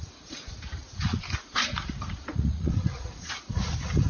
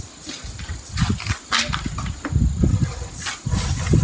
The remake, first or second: first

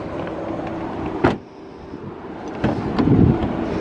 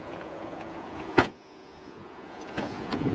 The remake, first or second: second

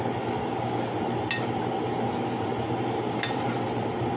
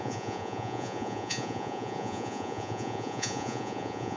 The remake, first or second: second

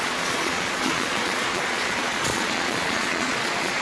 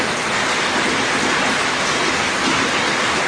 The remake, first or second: first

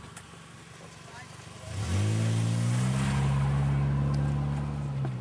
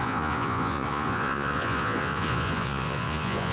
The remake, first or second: second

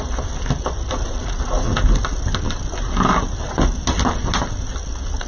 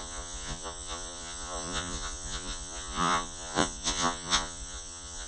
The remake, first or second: second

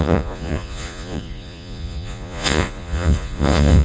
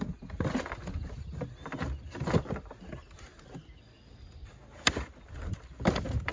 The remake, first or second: first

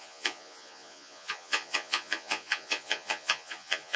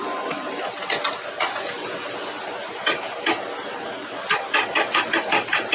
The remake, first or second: first